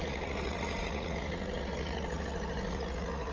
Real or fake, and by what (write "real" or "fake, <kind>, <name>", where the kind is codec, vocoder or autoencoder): fake, vocoder, Vocos